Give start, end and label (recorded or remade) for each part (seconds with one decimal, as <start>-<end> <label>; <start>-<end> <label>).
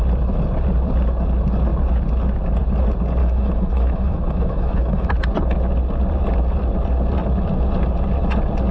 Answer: 0.0-3.2 recorded; 3.2-5.1 remade; 5.1-8.7 recorded